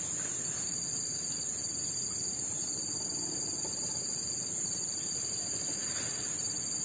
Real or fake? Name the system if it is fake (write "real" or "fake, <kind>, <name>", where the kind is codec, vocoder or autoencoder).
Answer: fake, vocoder, BigVGAN v2